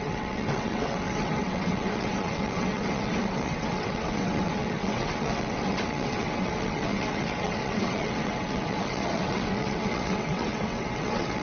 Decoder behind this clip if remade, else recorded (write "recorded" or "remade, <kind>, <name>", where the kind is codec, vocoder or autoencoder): remade, vocoder, WaveNeXt